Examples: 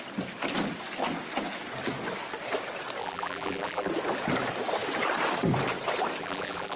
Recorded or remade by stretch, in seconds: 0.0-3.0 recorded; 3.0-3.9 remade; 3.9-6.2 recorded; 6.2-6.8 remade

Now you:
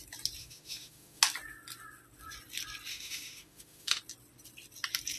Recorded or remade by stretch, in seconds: 0.0-0.4 recorded; 0.4-1.2 remade; 1.2-2.9 recorded; 2.9-4.0 remade; 4.0-5.2 recorded